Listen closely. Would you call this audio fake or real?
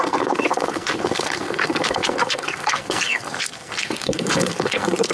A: fake